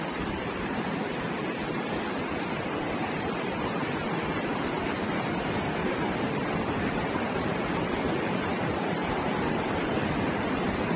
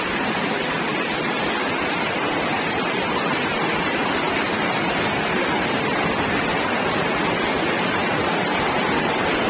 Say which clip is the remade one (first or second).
first